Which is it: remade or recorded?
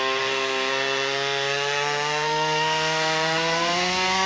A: remade